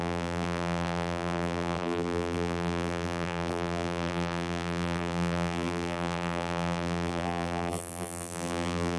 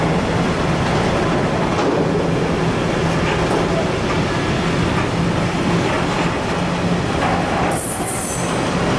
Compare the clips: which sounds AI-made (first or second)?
first